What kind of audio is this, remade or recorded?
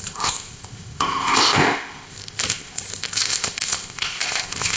remade